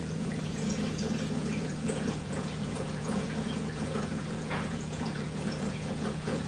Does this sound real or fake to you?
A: fake